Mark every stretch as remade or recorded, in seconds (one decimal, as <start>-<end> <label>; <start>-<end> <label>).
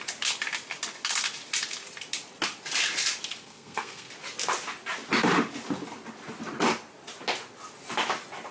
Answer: 0.0-3.4 recorded; 3.4-4.1 remade; 4.1-8.5 recorded